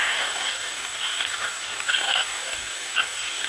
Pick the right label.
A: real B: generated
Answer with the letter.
B